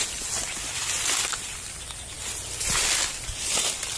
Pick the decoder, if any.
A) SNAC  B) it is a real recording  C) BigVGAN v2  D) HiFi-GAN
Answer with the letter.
B